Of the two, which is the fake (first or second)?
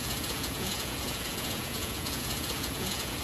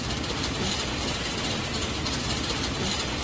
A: first